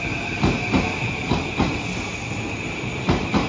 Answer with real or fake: real